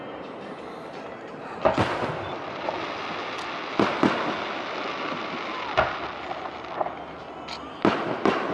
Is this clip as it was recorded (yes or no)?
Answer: yes